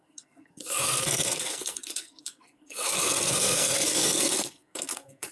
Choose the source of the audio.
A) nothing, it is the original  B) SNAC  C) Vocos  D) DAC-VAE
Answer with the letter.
B